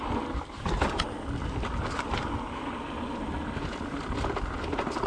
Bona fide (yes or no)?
yes